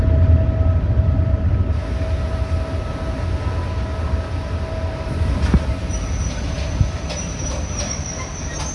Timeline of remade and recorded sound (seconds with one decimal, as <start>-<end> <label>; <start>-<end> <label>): 0.0-7.2 recorded; 7.2-7.8 remade; 7.8-8.7 recorded